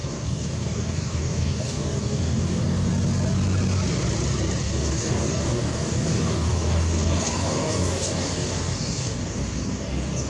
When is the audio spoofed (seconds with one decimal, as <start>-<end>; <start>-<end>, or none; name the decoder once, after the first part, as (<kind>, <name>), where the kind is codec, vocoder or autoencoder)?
0.0-2.9 (codec, DAC); 4.6-10.3